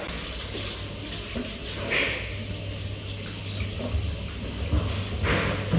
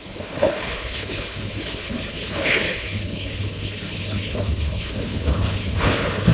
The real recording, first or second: first